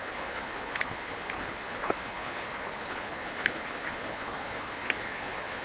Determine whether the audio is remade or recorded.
remade